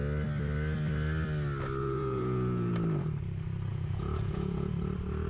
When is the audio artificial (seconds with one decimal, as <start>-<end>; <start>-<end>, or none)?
1.8-2.7; 3.7-4.7